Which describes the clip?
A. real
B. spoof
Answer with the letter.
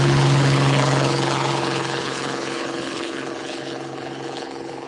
B